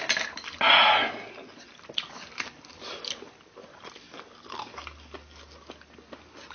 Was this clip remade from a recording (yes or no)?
no